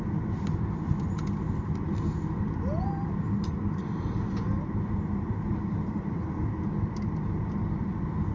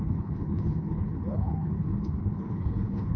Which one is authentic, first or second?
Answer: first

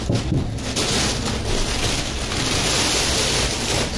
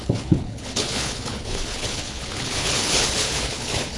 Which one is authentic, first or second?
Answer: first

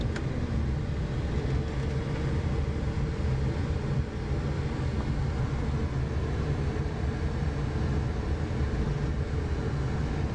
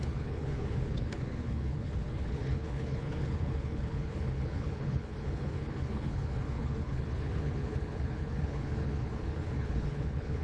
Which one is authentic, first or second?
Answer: first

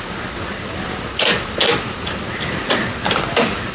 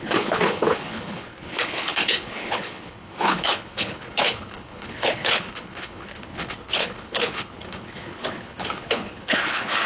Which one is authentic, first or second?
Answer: first